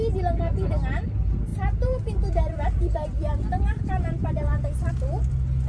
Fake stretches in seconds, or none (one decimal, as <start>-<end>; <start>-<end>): 1.5-4.9